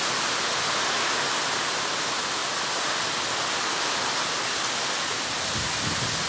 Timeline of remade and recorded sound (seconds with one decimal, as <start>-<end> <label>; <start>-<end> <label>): 0.0-6.3 recorded